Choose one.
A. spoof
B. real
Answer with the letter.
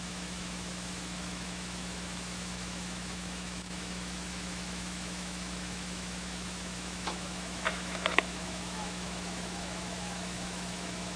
A